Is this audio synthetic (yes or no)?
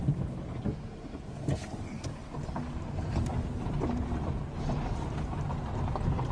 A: no